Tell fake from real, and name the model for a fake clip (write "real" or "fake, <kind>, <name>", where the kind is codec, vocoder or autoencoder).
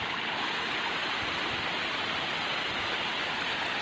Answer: real